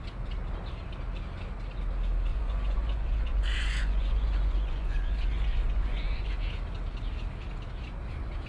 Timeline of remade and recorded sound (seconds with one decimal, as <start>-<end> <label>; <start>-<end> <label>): 0.0-2.3 recorded; 2.3-6.3 remade; 6.3-8.5 recorded